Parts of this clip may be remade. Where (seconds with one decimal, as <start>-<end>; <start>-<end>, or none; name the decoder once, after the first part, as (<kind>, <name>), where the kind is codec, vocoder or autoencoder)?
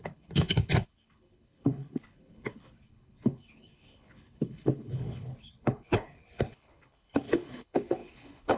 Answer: 0.0-8.6 (codec, HILCodec)